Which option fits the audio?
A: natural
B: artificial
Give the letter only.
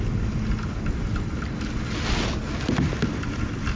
A